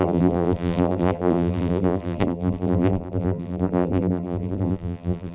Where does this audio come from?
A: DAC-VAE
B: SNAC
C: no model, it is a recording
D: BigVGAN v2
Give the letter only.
D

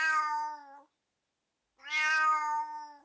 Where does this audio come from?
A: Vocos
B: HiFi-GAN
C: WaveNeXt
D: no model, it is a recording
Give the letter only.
D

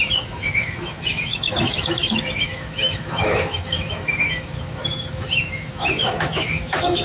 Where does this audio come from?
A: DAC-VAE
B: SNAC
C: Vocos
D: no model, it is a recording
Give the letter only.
A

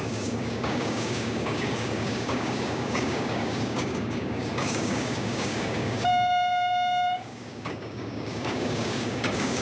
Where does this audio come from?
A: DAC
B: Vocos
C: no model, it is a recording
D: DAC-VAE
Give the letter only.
A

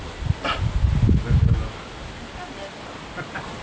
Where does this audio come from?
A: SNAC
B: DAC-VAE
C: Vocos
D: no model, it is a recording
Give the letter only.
D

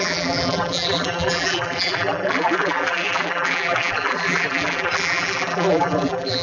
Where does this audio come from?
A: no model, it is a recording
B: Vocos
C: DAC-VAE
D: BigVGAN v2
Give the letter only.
D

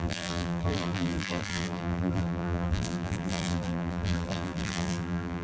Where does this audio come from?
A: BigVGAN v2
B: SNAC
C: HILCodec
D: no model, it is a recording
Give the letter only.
A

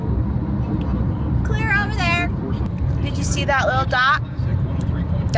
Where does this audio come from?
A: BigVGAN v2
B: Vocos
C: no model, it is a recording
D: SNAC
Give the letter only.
C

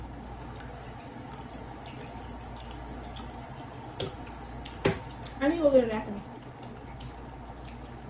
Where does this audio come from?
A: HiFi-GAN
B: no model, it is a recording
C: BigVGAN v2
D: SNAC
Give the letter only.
B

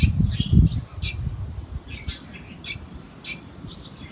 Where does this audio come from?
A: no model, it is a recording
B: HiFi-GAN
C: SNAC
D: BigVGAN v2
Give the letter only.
A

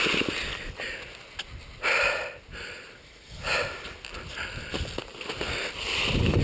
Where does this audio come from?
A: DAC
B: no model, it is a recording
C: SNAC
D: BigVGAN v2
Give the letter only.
B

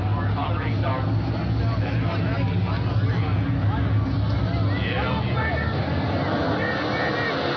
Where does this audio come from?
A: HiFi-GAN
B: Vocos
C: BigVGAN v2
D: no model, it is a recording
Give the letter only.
D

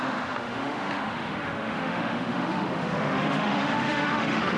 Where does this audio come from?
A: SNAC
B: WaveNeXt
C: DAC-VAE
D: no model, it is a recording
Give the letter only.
C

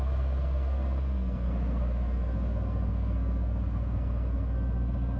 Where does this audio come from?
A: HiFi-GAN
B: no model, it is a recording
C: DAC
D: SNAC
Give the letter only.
D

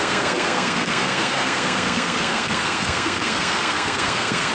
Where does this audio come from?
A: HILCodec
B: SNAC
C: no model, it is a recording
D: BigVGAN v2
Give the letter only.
B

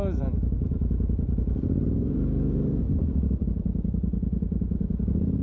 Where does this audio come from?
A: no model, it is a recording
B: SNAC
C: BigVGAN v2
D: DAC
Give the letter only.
C